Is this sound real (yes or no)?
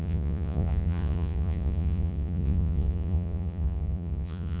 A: no